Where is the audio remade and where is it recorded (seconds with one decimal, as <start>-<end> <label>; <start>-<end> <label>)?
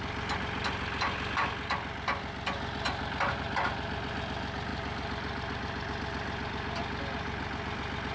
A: 0.0-8.1 recorded